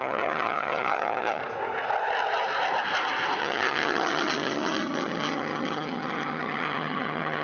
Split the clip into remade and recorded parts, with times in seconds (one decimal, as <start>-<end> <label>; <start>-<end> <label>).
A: 0.0-1.4 remade; 1.4-3.4 recorded; 3.4-7.4 remade